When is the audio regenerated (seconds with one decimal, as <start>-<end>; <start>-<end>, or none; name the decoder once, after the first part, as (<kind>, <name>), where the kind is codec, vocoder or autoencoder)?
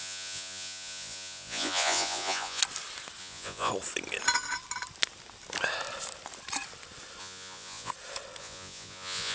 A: 0.0-2.6 (vocoder, Vocos); 3.2-3.7; 7.2-7.9; 8.4-9.3